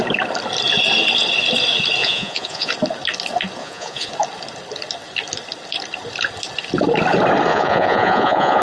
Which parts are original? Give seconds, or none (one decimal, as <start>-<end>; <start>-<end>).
0.0-2.0; 2.7-3.6; 4.1-7.5